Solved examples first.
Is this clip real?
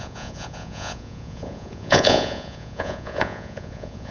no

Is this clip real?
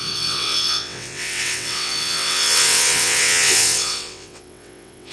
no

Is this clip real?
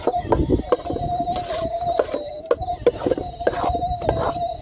yes